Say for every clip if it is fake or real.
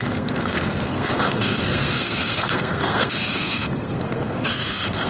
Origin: fake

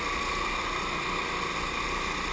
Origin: real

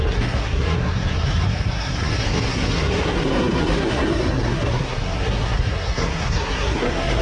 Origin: fake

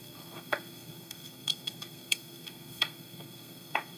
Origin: fake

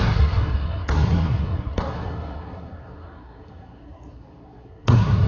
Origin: fake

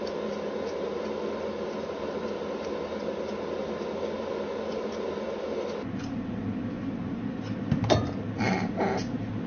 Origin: real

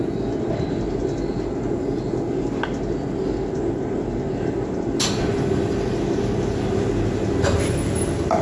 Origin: real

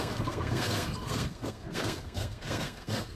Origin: fake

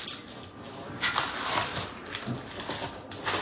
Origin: real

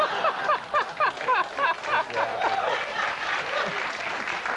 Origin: real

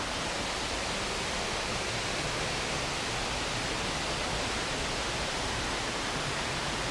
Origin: real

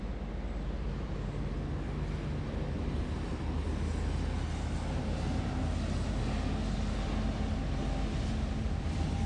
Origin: real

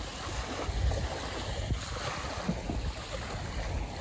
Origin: real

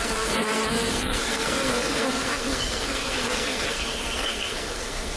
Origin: fake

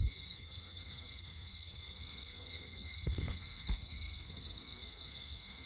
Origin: fake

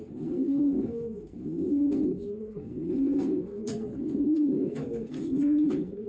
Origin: fake